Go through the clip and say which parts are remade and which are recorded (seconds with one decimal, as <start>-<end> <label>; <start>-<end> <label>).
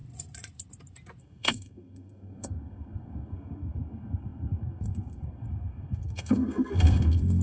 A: 0.0-1.2 recorded; 1.2-7.4 remade